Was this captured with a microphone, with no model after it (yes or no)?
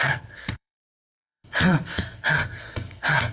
no